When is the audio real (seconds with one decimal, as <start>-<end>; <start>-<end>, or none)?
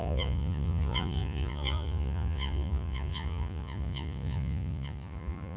none